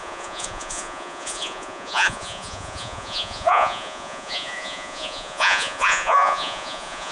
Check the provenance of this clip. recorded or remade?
remade